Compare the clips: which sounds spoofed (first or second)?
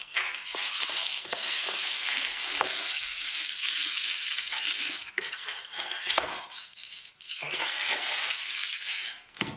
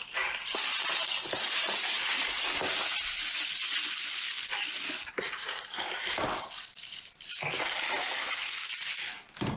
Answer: first